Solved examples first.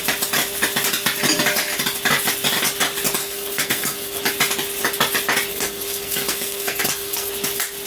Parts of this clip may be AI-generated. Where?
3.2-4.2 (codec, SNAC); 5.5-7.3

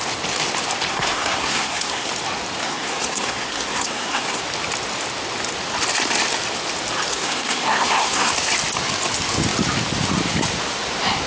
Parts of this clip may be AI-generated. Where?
0.9-2.1 (codec, SNAC); 2.6-4.4; 7.1-8.3

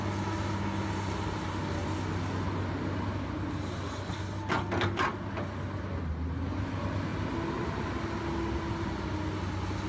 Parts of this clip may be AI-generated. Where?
none

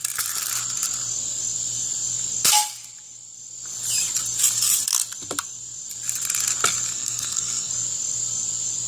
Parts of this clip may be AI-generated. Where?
6.9-7.7 (codec, SNAC)

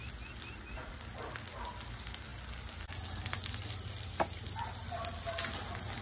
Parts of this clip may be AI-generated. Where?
none

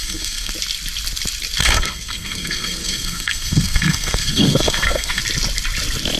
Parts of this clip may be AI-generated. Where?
0.0-0.5 (codec, SNAC); 1.6-5.2

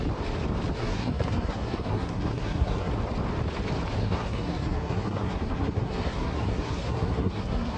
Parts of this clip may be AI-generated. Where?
0.8-2.9 (codec, SNAC); 4.0-7.8